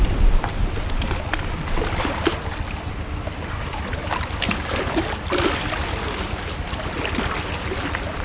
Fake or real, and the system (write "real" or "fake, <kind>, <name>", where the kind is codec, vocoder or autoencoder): real